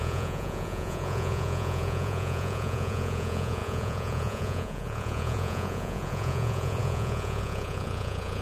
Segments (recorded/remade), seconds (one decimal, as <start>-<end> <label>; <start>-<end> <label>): 0.0-8.4 remade